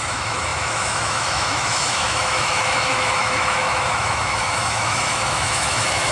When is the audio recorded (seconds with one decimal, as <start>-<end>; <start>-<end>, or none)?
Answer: none